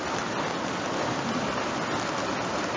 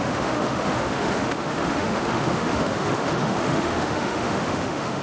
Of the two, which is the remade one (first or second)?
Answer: second